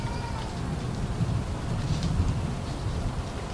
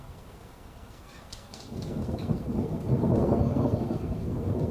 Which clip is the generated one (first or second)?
second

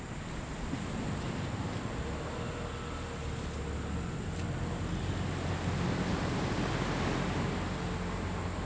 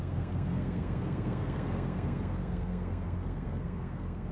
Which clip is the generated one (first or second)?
second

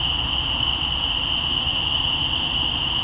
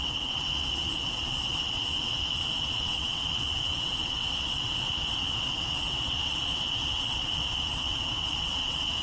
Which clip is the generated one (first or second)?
second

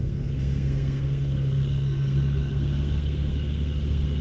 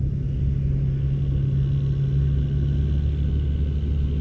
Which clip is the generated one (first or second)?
first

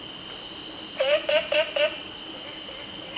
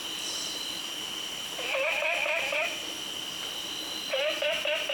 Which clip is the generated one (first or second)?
second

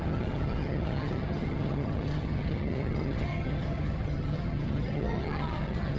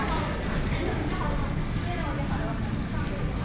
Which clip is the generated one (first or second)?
first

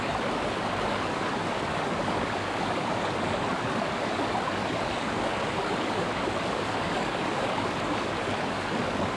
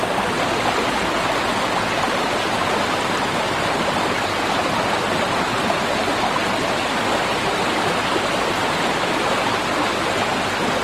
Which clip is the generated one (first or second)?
first